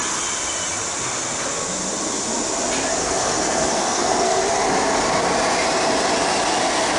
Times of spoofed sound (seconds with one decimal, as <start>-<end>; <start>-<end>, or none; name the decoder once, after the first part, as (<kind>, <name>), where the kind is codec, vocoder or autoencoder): 3.0-4.4 (codec, SNAC)